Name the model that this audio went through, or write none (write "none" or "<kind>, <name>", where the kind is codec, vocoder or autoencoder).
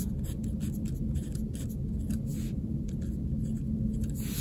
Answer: none